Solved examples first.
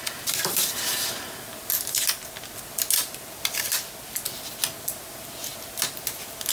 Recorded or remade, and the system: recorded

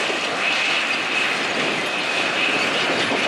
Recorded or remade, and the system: recorded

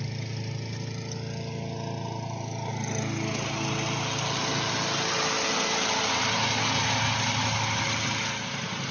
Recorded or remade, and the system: recorded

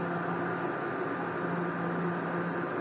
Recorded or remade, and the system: recorded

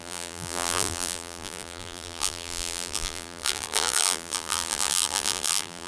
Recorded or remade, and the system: remade, vocoder, BigVGAN v2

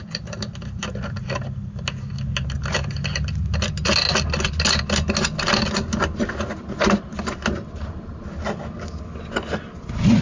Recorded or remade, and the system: recorded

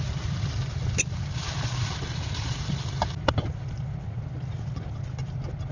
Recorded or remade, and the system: recorded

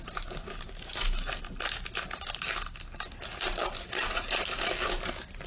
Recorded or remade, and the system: recorded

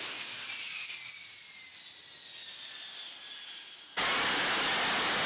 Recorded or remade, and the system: recorded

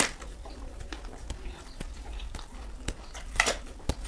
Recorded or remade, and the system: remade, vocoder, BigVGAN v2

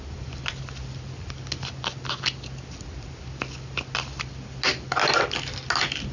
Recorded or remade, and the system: recorded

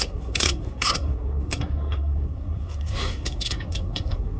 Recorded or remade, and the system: remade, codec, SNAC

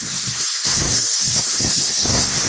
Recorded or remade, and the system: remade, codec, SNAC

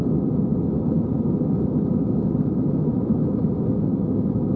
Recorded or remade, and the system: recorded